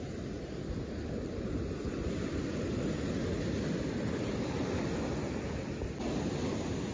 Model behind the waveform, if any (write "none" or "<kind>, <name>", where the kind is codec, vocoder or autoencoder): none